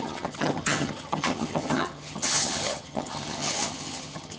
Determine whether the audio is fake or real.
fake